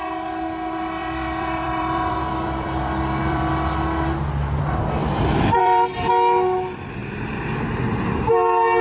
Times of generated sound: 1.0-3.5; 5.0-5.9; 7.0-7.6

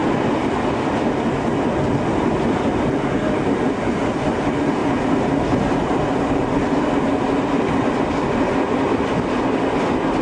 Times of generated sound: 2.3-4.8; 5.7-10.2

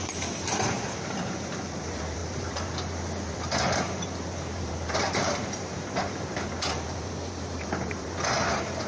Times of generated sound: 0.0-8.9